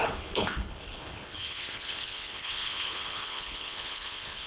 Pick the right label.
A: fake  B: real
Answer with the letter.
A